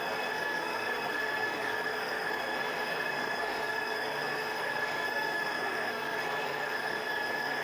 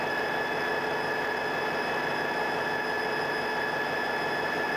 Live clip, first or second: second